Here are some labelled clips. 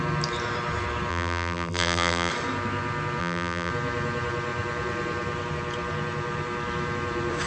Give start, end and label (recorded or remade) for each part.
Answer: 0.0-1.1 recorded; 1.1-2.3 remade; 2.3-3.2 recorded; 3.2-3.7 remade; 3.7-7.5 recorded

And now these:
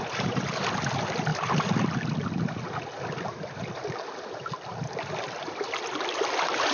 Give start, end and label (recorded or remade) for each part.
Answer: 0.0-6.7 recorded

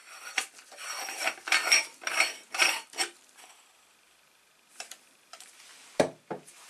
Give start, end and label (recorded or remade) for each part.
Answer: 0.0-4.0 recorded; 4.0-6.7 remade

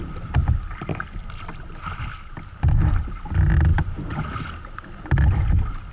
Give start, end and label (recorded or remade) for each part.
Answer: 0.0-5.9 recorded

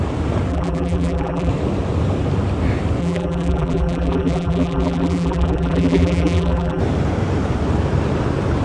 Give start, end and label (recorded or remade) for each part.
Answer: 0.0-0.5 recorded; 0.5-1.5 remade; 1.5-3.0 recorded; 3.0-6.8 remade; 6.8-8.6 recorded

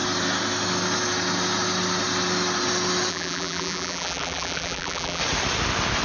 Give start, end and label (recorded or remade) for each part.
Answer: 0.0-3.1 recorded; 3.1-5.2 remade; 5.2-6.0 recorded

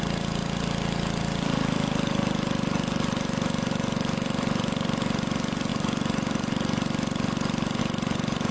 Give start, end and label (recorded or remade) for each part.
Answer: 0.0-2.2 remade; 2.2-3.7 recorded; 3.7-8.5 remade

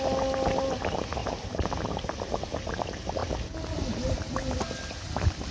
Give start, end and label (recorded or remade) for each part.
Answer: 0.0-1.2 recorded; 1.2-1.7 remade; 1.7-5.5 recorded